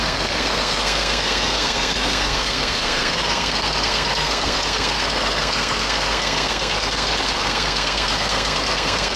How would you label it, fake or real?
fake